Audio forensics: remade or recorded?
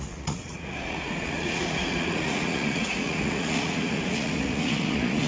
remade